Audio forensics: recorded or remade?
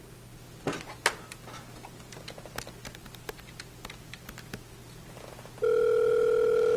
recorded